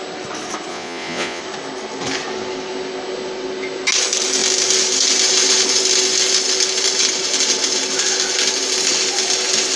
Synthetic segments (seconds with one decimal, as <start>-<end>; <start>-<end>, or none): 0.7-1.4